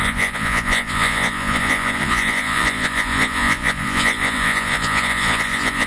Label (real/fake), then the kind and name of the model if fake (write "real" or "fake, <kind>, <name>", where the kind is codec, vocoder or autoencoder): fake, vocoder, Vocos